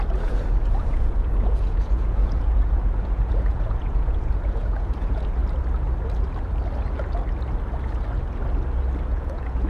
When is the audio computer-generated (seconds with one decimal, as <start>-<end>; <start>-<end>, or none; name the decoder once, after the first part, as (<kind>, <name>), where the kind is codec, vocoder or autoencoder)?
0.0-5.4 (vocoder, Vocos); 9.1-9.7